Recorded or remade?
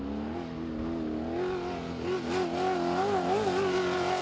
recorded